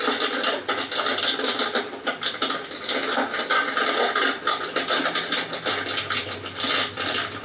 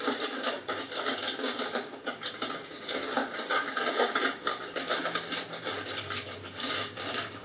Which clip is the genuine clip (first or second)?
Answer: first